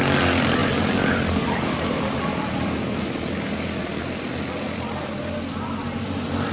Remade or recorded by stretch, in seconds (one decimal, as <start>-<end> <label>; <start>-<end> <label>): 0.0-0.6 recorded; 0.6-1.2 remade; 1.2-6.5 recorded